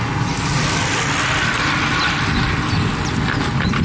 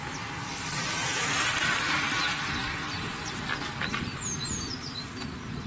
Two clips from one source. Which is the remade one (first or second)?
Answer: second